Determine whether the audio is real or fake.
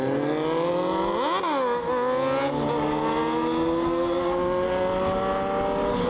real